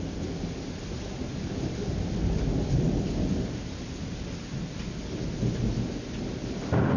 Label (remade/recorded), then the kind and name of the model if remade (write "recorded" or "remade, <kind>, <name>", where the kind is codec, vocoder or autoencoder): recorded